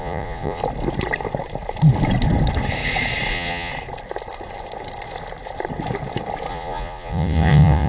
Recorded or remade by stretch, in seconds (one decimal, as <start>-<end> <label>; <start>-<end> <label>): 0.0-0.6 remade; 0.6-3.3 recorded; 3.3-3.7 remade; 3.7-6.5 recorded; 6.5-7.9 remade